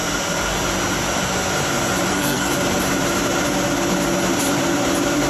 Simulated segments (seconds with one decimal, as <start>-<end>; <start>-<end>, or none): 2.1-2.5